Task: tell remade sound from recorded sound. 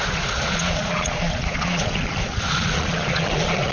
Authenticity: remade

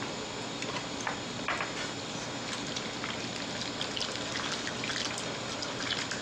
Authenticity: recorded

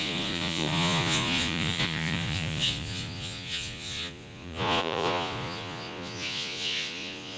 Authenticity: remade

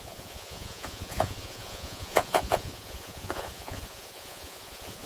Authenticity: remade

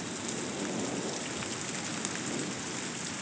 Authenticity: recorded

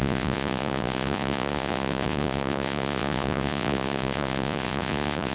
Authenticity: remade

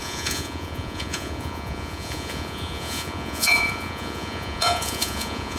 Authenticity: remade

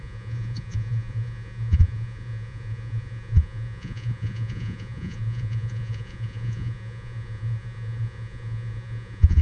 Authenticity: remade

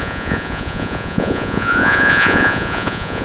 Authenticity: remade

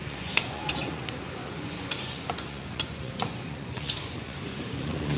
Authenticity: remade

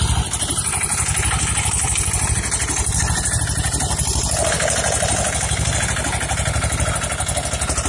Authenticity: recorded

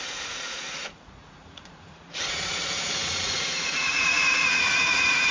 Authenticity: remade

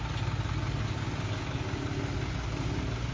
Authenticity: recorded